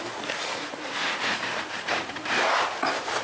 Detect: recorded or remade remade